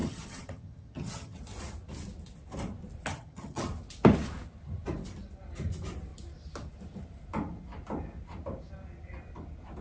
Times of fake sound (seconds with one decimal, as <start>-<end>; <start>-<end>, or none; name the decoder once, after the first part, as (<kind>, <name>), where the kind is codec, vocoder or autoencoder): 0.0-1.4 (vocoder, HiFi-GAN); 3.1-3.7